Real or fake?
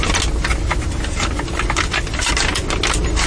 real